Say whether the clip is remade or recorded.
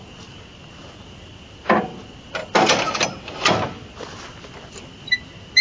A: recorded